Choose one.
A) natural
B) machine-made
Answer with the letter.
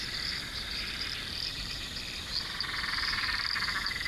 B